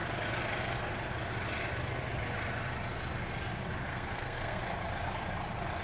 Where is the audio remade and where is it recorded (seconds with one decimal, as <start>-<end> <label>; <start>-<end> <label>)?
0.0-3.9 recorded; 3.9-4.6 remade; 4.6-5.8 recorded